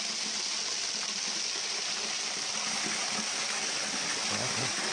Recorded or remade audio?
recorded